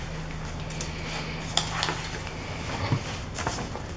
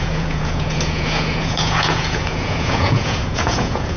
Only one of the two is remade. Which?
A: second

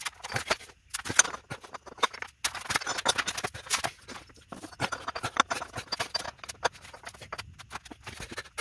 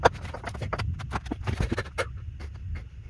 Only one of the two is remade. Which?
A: second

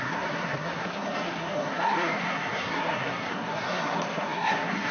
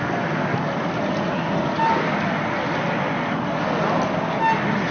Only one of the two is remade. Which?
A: first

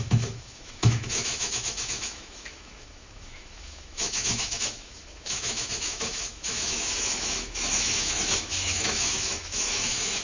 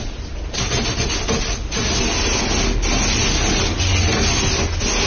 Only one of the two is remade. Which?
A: first